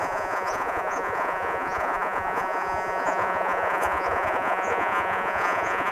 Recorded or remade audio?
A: remade